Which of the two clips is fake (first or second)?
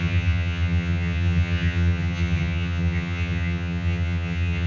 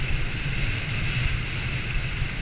first